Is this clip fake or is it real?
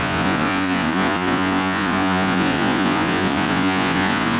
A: fake